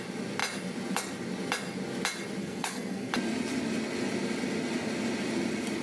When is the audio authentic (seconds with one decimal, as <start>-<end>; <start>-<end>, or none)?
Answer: 0.0-2.4; 3.1-5.8